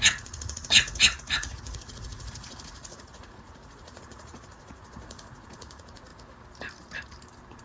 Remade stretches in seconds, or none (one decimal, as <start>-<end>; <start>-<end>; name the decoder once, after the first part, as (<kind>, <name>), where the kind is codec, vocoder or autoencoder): 0.0-6.1 (vocoder, Vocos)